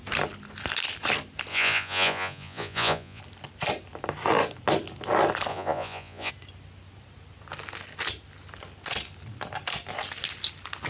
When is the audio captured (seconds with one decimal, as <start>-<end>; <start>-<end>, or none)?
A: 0.0-1.5; 3.2-5.5; 6.3-10.9